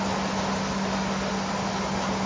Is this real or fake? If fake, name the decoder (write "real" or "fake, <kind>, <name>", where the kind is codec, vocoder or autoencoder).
real